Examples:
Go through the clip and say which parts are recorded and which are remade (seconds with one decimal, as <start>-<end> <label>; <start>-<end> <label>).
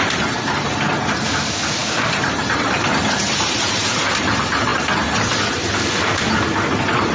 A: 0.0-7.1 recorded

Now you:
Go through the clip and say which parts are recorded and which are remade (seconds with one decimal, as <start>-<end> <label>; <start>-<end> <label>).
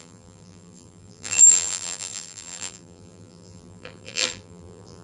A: 0.0-5.0 remade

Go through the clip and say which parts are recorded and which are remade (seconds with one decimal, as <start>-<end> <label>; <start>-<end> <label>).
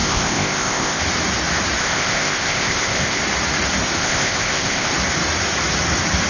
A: 0.0-1.0 remade; 1.0-1.8 recorded; 1.8-3.2 remade; 3.2-4.0 recorded; 4.0-4.9 remade; 4.9-6.3 recorded